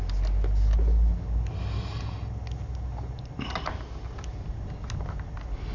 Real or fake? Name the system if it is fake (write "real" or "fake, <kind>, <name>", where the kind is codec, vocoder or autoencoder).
real